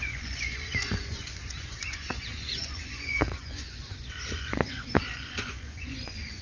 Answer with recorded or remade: remade